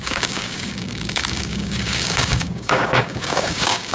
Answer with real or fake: fake